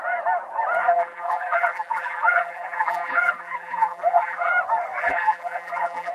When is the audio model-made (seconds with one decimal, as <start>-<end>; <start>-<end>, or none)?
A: 0.8-4.5; 5.0-6.1